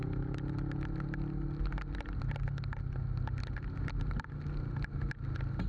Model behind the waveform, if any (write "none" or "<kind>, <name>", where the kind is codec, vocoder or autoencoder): none